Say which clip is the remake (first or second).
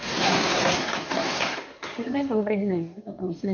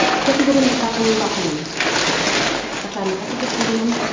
first